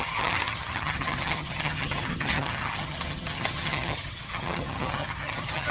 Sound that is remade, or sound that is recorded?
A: remade